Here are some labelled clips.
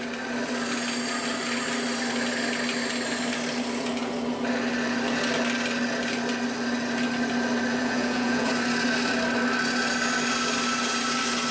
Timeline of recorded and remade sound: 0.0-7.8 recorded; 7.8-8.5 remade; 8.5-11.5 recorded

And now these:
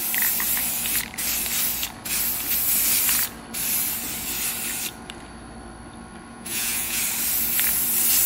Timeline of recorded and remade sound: 0.0-6.3 recorded; 6.3-7.0 remade; 7.0-8.3 recorded

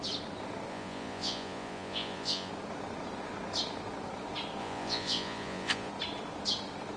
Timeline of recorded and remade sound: 0.0-0.7 recorded; 0.7-2.5 remade; 2.5-4.6 recorded; 4.6-5.9 remade; 5.9-7.0 recorded